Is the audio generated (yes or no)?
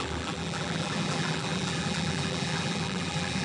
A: yes